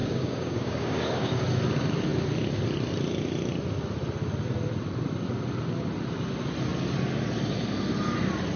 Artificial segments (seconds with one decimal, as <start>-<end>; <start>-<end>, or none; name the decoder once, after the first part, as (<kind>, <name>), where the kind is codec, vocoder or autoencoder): 0.0-1.4 (codec, DAC)